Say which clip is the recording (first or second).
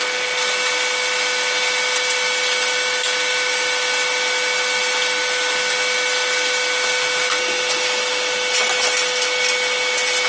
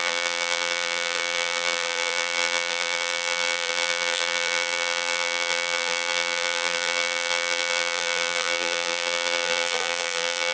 first